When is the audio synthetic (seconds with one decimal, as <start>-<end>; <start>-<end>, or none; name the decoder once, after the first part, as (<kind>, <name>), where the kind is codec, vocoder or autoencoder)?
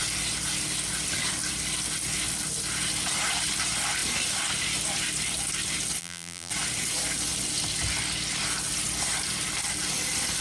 6.0-6.5 (vocoder, BigVGAN v2)